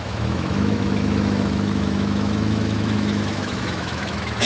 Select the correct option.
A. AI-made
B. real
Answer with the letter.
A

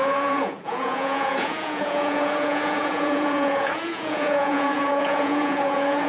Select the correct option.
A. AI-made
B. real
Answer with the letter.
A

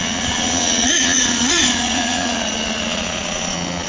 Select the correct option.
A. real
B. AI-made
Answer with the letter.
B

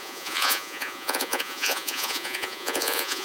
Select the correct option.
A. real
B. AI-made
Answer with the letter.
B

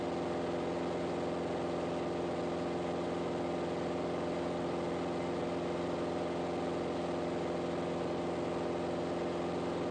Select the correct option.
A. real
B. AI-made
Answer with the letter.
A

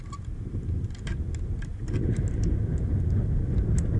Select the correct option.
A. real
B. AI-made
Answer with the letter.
A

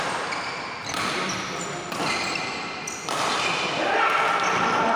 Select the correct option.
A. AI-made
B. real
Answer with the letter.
B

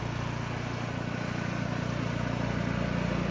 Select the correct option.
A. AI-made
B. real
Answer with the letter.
B